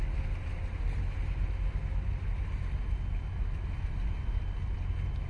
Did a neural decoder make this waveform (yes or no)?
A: no